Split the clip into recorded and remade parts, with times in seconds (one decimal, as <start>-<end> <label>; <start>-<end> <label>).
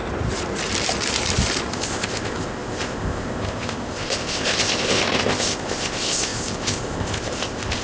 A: 0.0-1.7 recorded; 1.7-7.8 remade